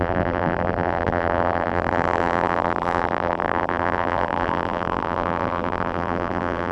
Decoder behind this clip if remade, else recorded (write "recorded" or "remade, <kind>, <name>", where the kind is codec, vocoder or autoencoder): remade, vocoder, BigVGAN v2